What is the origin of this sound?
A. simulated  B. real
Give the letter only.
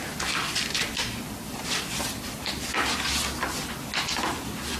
B